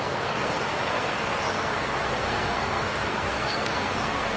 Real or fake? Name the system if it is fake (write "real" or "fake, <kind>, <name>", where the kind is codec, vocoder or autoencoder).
fake, codec, SNAC